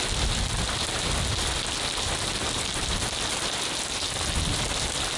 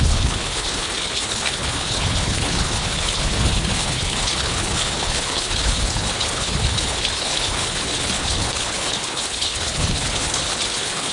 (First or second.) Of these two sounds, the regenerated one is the second